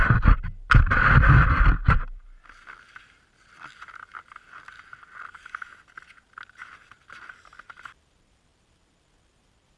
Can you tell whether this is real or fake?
real